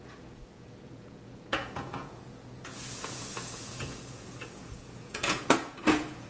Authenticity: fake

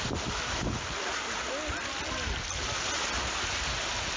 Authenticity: real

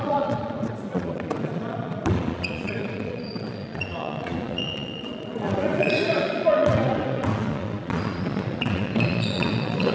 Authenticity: fake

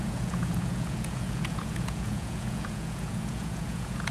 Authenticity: fake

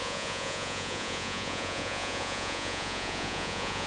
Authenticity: fake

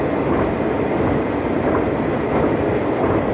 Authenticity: real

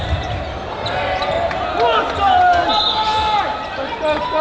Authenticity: real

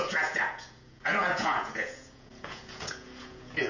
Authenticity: fake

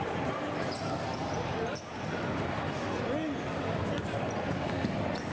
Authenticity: real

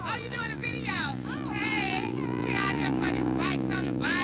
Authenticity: fake